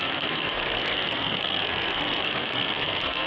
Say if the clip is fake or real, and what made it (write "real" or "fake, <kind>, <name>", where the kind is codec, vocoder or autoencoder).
fake, codec, SNAC